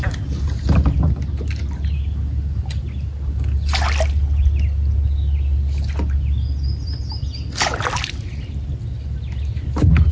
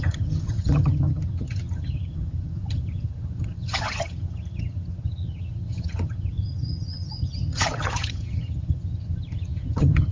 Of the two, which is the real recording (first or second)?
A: first